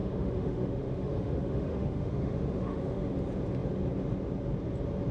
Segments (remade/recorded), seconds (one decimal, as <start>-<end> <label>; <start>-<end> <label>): 0.0-3.1 remade; 3.1-5.1 recorded

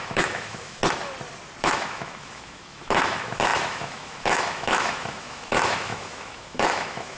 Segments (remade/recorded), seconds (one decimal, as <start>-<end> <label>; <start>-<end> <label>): 0.0-0.8 remade; 0.8-1.6 recorded; 1.6-7.2 remade

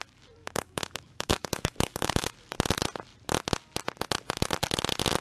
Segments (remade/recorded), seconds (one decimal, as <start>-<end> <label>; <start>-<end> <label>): 0.0-0.4 recorded; 0.4-2.3 remade; 2.3-5.2 recorded

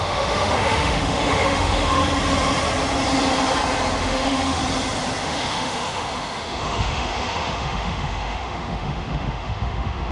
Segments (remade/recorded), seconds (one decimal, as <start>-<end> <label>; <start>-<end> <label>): 0.0-2.0 remade; 2.0-4.0 recorded; 4.0-4.6 remade; 4.6-5.2 recorded; 5.2-10.1 remade

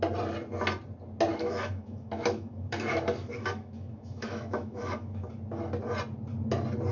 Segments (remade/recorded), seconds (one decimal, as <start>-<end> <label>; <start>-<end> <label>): 0.0-1.3 recorded; 1.3-5.3 remade; 5.3-6.9 recorded

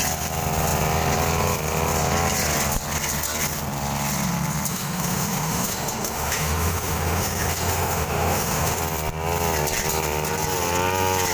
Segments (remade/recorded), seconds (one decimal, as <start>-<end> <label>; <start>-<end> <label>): 0.0-4.7 recorded; 4.7-8.8 remade; 8.8-11.3 recorded

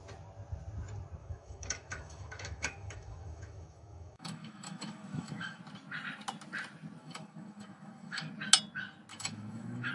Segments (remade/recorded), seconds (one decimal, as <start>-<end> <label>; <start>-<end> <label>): 0.0-1.2 recorded; 1.2-5.6 remade; 5.6-7.0 recorded; 7.0-8.3 remade; 8.3-9.1 recorded; 9.1-9.9 remade

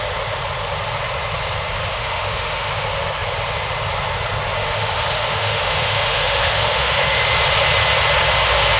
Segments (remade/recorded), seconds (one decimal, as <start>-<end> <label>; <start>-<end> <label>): 0.0-1.8 recorded; 1.8-2.7 remade; 2.7-4.6 recorded; 4.6-7.2 remade; 7.2-8.8 recorded